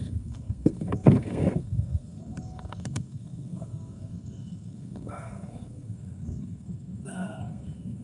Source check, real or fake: fake